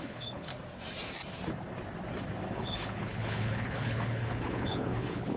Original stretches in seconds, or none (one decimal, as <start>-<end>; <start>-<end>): 0.5-2.5